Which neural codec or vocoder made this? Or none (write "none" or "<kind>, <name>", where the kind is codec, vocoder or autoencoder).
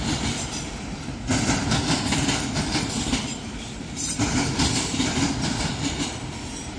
vocoder, BigVGAN v2